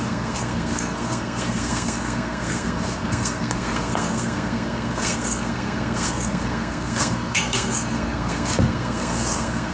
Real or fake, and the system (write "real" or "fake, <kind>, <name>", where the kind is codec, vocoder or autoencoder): fake, codec, SNAC